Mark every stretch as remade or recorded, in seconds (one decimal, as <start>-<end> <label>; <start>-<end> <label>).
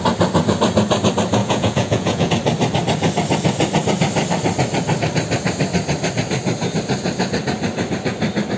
0.0-1.4 recorded; 1.4-2.3 remade; 2.3-8.6 recorded